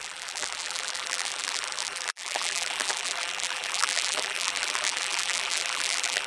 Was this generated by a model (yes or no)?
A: yes